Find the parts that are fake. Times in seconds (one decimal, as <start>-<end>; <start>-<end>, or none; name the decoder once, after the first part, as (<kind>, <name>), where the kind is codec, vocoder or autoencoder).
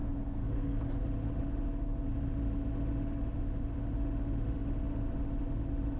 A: 0.0-0.8 (codec, SNAC)